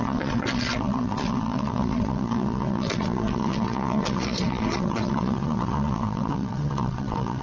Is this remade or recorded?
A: remade